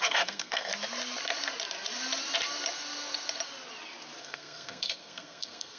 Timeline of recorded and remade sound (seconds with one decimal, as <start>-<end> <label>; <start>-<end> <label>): 0.0-0.7 remade; 0.7-4.2 recorded; 4.2-5.8 remade